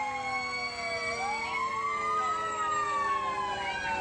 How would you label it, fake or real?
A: real